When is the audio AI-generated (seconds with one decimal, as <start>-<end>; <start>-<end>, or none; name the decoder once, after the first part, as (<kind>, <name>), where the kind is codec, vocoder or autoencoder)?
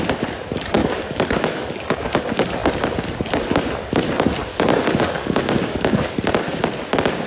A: 0.8-2.1 (codec, DAC); 4.5-6.1